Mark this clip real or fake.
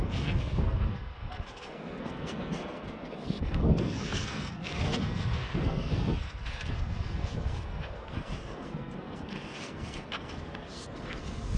fake